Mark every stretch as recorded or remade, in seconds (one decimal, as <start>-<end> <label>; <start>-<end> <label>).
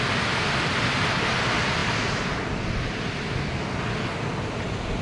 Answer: 0.0-1.8 recorded; 1.8-2.5 remade; 2.5-5.0 recorded